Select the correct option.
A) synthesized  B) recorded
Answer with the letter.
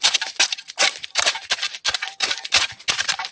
B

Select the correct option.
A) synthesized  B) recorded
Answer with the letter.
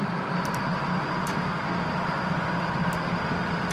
B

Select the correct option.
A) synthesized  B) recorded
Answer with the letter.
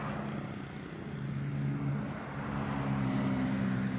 B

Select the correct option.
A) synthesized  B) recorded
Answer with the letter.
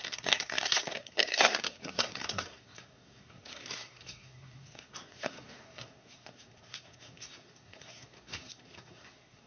A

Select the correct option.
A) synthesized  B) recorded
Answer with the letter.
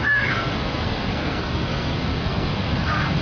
A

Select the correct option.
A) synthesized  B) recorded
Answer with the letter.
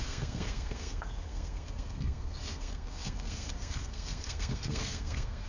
A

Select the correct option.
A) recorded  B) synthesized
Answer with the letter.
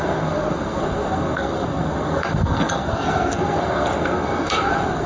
B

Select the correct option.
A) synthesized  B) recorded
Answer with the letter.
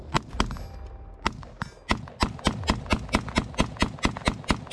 B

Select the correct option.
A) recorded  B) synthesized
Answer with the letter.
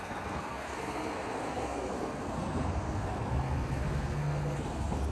B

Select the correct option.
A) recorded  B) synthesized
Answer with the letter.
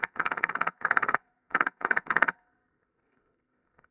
B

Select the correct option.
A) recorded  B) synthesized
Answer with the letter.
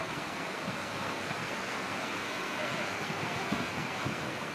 B